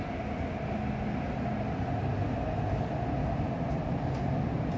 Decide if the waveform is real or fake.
real